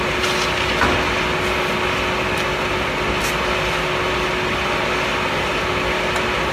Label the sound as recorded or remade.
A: recorded